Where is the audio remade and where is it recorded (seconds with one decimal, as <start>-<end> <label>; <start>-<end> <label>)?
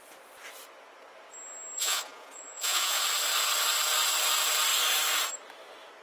0.0-1.8 recorded; 1.8-3.0 remade; 3.0-6.0 recorded